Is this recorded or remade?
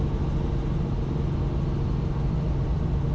recorded